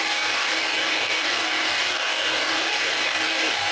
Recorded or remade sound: remade